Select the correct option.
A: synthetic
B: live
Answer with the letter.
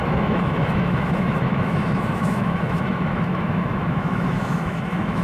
A